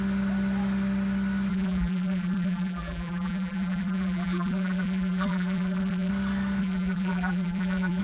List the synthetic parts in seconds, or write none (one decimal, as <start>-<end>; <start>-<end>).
1.5-6.1; 6.6-8.0